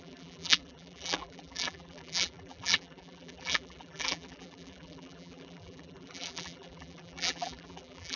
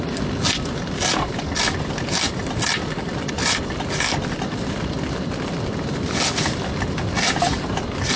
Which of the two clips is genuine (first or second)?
second